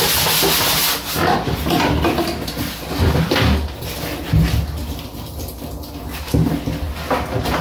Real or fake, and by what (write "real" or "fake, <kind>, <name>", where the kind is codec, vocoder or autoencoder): real